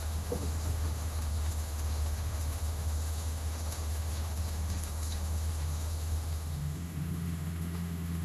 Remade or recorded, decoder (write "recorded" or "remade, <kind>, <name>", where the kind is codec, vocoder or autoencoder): remade, autoencoder, DAC-VAE